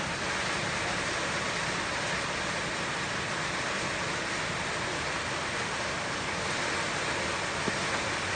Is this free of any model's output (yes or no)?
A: yes